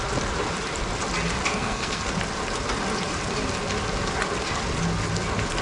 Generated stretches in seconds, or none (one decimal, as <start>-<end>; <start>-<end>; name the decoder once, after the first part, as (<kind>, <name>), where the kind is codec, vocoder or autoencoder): 1.4-2.1 (codec, SNAC)